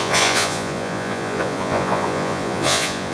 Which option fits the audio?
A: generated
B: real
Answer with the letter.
A